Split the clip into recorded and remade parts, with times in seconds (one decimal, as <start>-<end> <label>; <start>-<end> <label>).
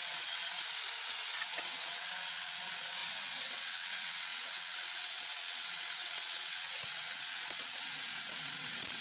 0.0-0.4 remade; 0.4-1.0 recorded; 1.0-9.0 remade